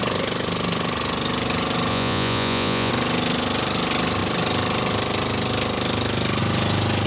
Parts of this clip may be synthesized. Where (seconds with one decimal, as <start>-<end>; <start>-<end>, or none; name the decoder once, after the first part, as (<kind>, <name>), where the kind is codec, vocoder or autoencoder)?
1.9-2.9 (vocoder, Vocos)